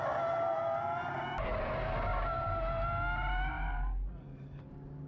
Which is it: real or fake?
real